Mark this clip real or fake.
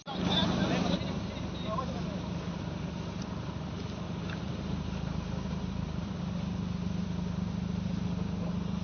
real